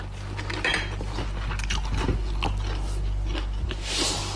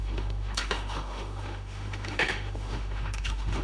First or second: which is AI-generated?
second